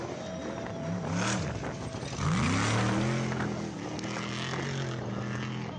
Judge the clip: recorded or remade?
recorded